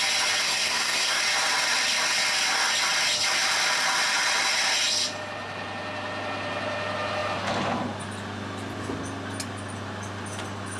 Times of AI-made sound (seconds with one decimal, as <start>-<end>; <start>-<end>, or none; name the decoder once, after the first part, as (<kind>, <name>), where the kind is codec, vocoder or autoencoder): 0.4-1.2 (codec, SNAC)